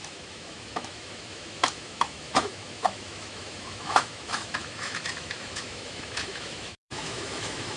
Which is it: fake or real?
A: fake